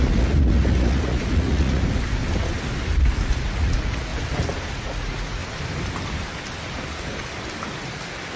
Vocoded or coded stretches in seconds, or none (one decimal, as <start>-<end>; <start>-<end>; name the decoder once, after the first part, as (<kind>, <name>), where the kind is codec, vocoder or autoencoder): 0.0-2.2 (vocoder, Vocos); 3.0-4.1; 4.7-5.4